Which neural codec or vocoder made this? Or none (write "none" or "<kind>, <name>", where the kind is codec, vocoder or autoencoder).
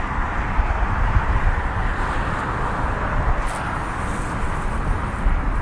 none